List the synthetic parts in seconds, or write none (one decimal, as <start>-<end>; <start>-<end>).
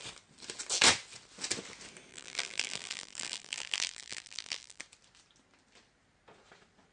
2.1-4.8